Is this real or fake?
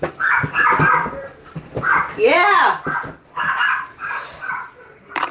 real